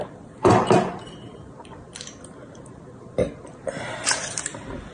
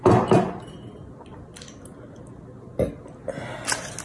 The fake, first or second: first